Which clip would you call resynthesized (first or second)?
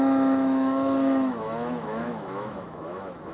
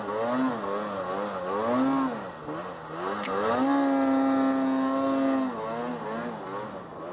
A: first